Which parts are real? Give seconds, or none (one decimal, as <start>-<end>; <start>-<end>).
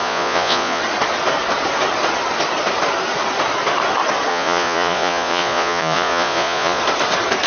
0.8-4.3; 6.8-7.5